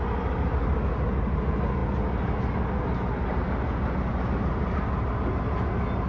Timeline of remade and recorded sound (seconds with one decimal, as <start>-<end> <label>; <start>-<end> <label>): 0.0-6.1 recorded